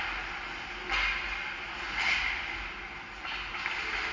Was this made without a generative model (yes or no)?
yes